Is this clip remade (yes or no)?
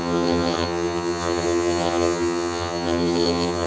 yes